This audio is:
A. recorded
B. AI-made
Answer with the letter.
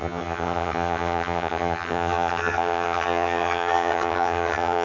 B